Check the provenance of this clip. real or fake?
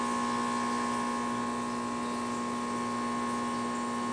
real